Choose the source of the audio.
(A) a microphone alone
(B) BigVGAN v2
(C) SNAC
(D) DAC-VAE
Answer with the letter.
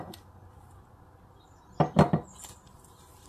A